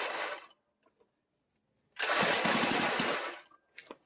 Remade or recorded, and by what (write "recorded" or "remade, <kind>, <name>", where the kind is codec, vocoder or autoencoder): recorded